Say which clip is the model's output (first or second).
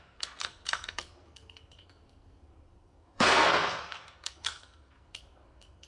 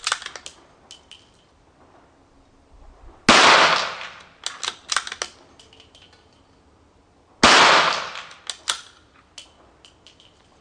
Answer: first